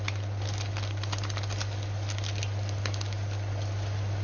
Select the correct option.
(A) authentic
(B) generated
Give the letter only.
A